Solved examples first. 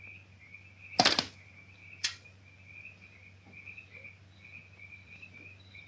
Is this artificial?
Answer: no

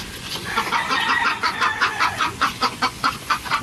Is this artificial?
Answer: yes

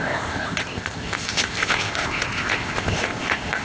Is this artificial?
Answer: yes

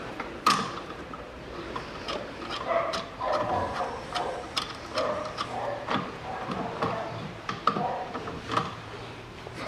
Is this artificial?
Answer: yes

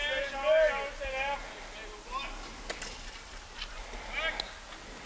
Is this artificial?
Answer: no